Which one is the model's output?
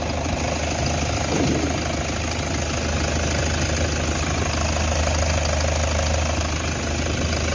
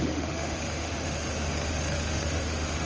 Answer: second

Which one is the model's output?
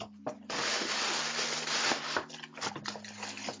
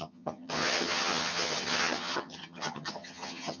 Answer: second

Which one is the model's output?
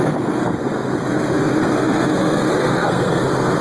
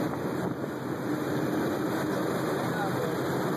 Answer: first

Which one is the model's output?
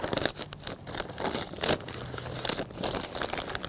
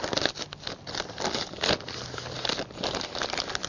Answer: first